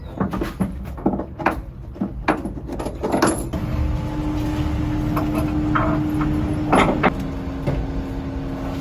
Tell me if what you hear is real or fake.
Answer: real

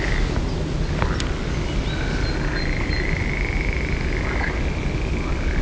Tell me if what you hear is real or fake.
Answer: real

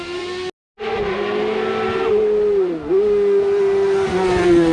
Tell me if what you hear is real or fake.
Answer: real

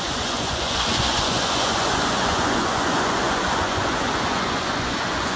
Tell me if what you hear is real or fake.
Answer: fake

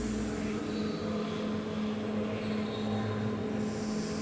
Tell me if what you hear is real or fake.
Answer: real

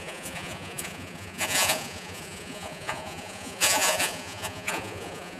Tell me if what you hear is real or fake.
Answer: fake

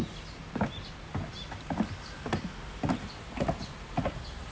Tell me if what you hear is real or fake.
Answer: real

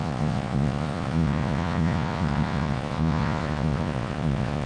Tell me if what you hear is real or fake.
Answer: fake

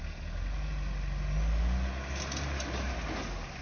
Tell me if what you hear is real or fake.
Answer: real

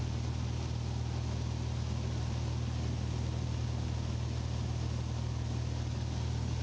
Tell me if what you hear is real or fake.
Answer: real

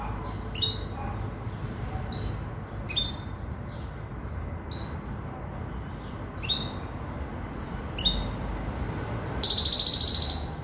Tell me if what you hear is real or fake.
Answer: real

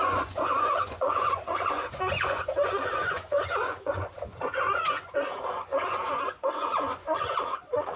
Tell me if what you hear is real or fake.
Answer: fake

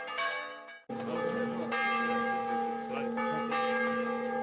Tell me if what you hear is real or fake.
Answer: real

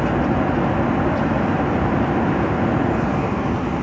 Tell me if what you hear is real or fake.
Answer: real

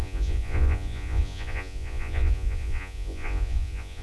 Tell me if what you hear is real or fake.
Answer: fake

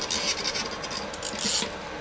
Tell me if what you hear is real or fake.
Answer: real